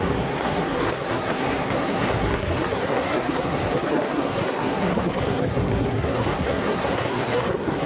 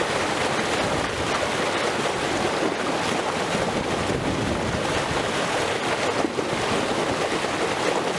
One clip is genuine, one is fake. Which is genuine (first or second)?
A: second